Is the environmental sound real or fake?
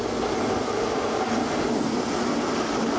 real